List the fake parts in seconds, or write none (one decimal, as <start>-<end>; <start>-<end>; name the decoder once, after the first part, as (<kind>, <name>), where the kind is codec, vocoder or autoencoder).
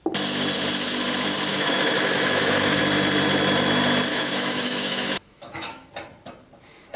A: 1.5-2.8 (autoencoder, DAC-VAE); 4.1-5.9